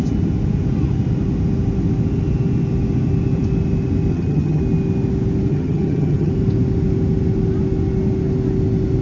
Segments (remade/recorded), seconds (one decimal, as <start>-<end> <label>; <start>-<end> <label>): 0.0-4.1 recorded; 4.1-4.6 remade; 4.6-5.5 recorded; 5.5-6.3 remade; 6.3-9.0 recorded